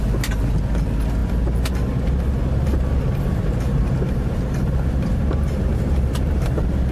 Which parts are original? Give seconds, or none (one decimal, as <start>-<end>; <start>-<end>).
0.0-2.4; 6.5-6.9